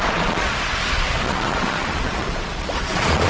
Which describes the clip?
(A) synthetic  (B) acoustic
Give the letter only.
A